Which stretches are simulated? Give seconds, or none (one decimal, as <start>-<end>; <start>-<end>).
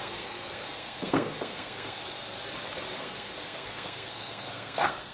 0.0-2.0; 3.0-5.1